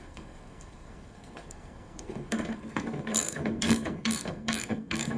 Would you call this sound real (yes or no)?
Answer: no